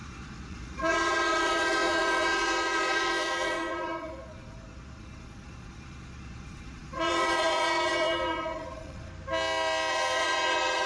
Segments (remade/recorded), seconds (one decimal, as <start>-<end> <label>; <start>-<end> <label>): 0.0-9.1 remade; 9.1-9.9 recorded; 9.9-10.9 remade